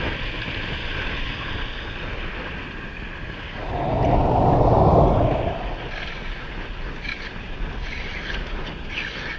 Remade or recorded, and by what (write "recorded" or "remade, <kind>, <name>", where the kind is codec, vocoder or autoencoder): recorded